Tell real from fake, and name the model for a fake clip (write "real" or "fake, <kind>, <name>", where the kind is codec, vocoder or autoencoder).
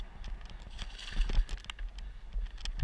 real